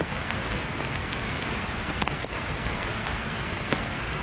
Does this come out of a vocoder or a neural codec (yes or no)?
yes